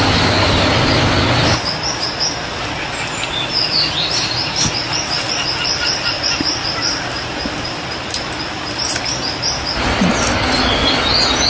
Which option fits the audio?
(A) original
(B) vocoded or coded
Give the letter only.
A